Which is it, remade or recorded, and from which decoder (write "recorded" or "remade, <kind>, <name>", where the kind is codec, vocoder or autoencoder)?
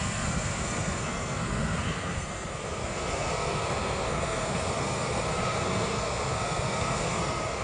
remade, codec, SNAC